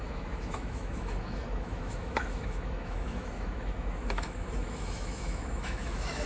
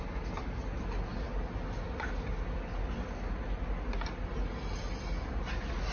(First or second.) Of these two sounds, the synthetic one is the first